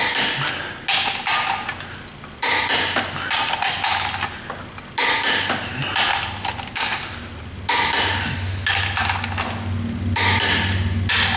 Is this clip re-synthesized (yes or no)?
no